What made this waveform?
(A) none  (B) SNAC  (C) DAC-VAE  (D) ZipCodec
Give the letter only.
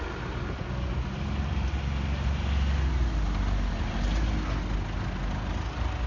A